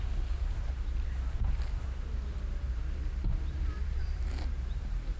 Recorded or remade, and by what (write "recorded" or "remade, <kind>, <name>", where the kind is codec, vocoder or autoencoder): remade, vocoder, BigVGAN v2